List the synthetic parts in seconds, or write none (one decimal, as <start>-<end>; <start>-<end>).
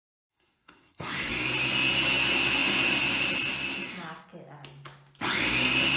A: 0.0-1.3